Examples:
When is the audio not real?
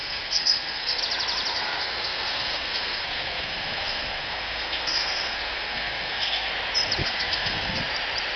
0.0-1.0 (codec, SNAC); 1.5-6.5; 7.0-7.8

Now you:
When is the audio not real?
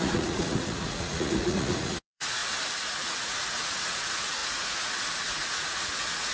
0.0-2.4 (vocoder, Vocos); 2.9-6.3